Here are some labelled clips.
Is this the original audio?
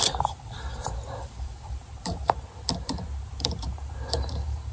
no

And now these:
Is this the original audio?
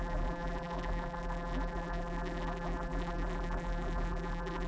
no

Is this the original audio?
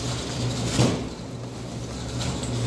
yes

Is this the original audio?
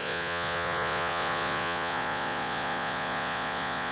no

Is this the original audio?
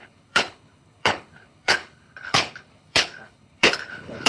no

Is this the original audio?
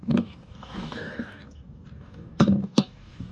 no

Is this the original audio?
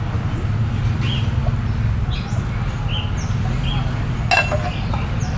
yes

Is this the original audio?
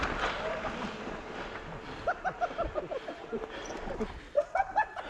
yes